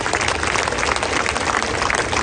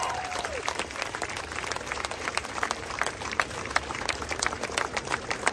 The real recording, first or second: first